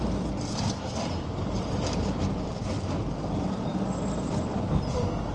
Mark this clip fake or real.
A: real